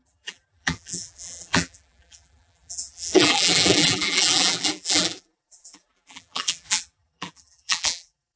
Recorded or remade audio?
remade